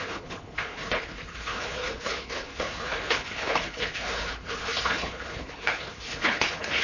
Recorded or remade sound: remade